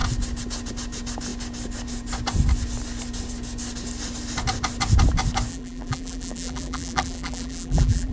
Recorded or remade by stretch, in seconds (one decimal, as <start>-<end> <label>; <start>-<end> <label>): 0.0-5.5 recorded; 5.5-8.1 remade